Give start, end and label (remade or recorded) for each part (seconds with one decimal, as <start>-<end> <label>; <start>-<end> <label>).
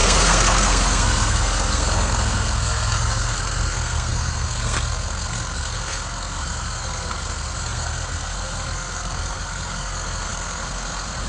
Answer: 0.0-11.3 remade